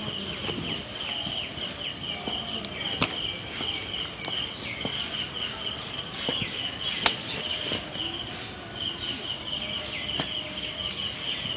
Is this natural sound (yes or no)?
yes